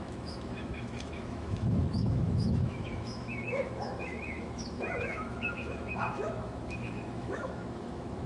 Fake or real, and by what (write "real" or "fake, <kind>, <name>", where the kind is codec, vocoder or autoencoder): fake, autoencoder, DAC-VAE